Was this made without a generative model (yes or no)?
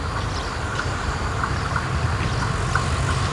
yes